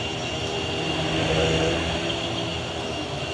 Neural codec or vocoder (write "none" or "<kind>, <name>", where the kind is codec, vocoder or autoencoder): none